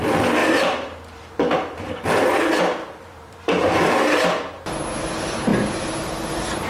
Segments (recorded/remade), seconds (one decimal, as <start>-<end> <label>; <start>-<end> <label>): 0.0-0.4 recorded; 0.4-3.9 remade; 3.9-6.7 recorded